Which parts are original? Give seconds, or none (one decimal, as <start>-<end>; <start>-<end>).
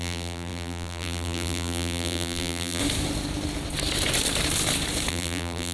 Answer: 2.8-5.1